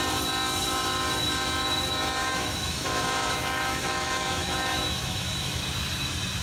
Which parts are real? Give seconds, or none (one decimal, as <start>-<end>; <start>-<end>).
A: 0.0-2.2; 5.6-6.4